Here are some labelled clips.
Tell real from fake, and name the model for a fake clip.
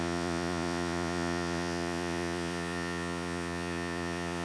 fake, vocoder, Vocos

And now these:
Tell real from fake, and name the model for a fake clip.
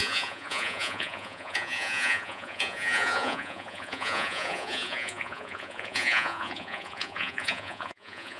fake, vocoder, Vocos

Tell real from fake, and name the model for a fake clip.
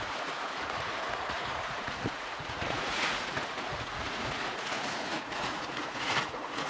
fake, vocoder, Vocos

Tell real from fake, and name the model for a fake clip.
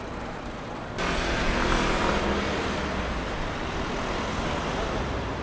real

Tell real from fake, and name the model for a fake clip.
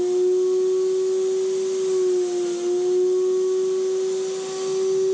real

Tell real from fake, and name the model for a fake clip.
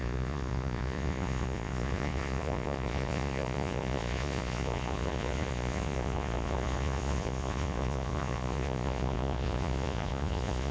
fake, vocoder, Vocos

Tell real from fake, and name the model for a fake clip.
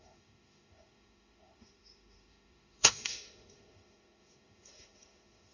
fake, autoencoder, DAC-VAE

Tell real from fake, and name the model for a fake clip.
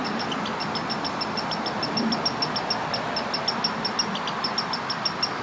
real